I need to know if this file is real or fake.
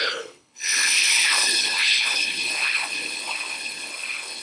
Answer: fake